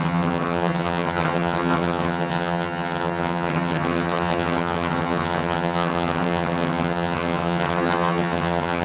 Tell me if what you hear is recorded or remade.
remade